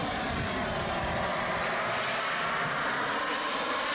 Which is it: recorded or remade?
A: recorded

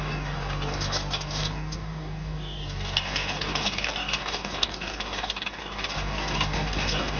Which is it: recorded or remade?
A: remade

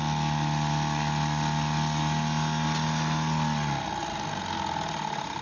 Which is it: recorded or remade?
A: recorded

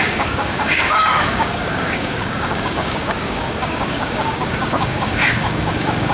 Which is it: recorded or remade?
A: remade